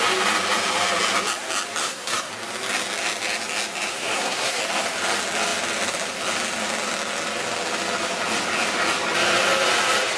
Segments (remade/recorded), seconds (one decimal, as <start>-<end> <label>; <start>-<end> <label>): 0.0-1.8 recorded; 1.8-2.3 remade; 2.3-3.9 recorded; 3.9-4.6 remade; 4.6-10.2 recorded